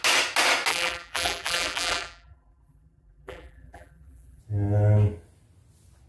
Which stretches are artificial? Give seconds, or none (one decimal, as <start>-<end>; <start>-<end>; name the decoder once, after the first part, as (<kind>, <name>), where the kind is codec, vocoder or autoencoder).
0.7-4.4 (vocoder, BigVGAN v2)